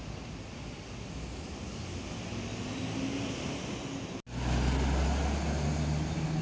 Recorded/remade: recorded